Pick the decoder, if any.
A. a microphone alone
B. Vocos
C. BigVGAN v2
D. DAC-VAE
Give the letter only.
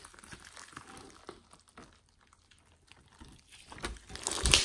A